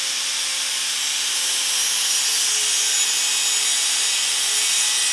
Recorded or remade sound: recorded